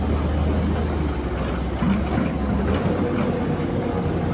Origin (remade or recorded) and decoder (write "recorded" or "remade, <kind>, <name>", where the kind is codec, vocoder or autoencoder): recorded